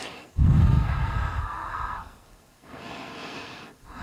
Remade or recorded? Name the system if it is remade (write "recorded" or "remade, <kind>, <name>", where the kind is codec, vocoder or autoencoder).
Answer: remade, codec, SNAC